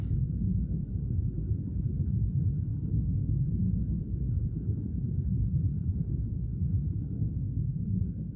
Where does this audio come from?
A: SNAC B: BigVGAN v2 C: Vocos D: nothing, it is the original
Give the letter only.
A